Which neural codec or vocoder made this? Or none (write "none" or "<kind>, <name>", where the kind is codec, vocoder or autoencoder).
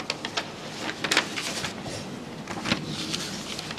none